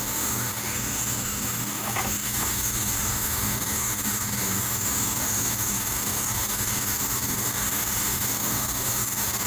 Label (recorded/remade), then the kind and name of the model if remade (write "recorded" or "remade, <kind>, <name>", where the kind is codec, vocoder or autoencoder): remade, codec, DAC